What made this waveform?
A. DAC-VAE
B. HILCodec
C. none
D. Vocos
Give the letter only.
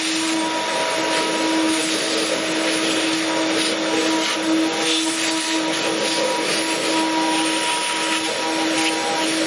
C